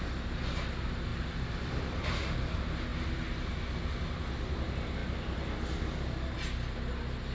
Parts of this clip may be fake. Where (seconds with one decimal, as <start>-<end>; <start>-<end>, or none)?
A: 1.1-2.5